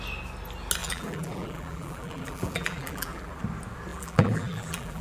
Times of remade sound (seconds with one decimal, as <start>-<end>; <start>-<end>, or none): 0.8-3.4; 3.9-5.0